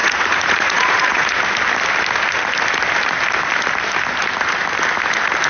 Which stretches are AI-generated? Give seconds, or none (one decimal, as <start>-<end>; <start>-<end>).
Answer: 0.0-1.4